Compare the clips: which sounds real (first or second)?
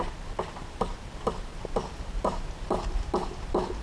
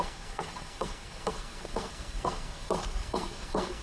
first